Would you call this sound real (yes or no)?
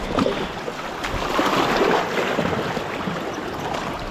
yes